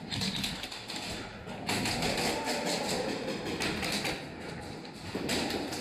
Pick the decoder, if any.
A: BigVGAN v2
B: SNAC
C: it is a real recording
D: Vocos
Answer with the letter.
C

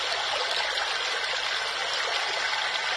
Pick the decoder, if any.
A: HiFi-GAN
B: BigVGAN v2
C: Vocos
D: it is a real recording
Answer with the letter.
D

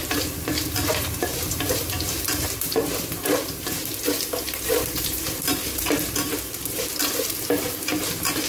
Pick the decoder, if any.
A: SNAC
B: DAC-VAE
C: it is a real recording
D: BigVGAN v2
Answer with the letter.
D